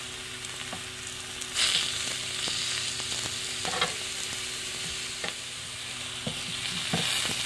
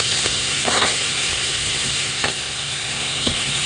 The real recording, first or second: first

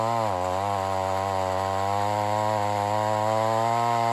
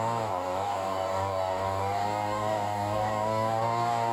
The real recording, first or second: first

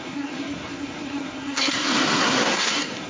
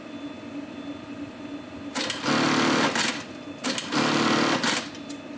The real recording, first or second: second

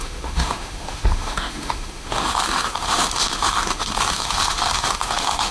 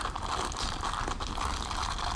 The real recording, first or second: second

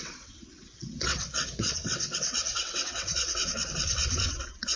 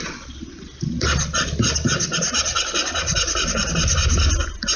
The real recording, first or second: second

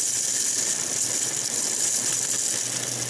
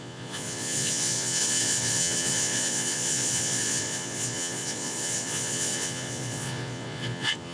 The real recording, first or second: first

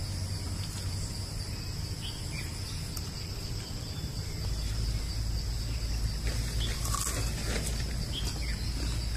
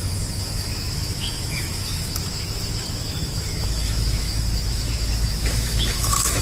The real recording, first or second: first